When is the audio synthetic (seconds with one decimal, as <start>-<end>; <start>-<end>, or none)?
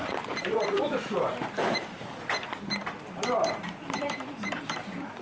0.0-5.2